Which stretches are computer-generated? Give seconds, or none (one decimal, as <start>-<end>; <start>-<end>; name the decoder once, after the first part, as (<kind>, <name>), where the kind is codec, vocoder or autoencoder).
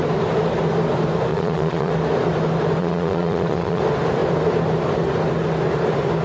1.3-1.9 (vocoder, Vocos); 2.8-3.8